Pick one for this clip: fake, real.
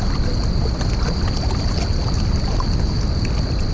real